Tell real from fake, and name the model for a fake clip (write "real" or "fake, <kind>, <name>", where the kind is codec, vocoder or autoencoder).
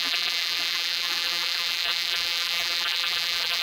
fake, vocoder, BigVGAN v2